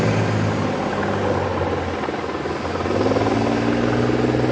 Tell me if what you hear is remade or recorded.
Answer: recorded